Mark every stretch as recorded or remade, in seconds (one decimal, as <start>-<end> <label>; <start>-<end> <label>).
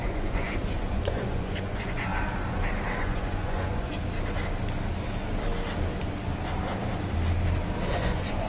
0.0-2.1 remade; 2.1-3.0 recorded; 3.0-3.9 remade; 3.9-7.9 recorded; 7.9-8.5 remade